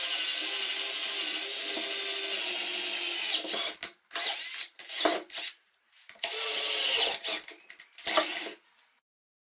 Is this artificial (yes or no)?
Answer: no